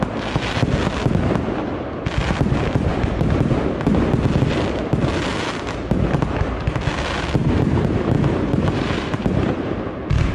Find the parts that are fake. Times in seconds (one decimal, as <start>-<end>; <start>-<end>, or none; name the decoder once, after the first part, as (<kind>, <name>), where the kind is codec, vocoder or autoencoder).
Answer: 2.9-3.4 (vocoder, BigVGAN v2); 7.4-9.5